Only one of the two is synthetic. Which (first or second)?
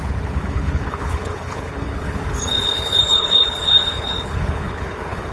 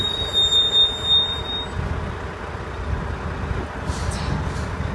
first